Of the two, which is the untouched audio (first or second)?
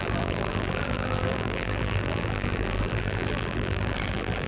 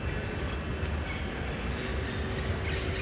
second